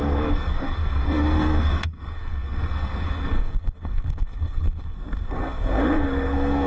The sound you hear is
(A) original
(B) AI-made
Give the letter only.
B